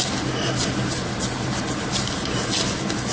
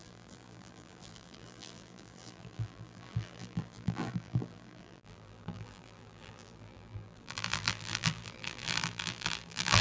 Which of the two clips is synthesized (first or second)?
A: second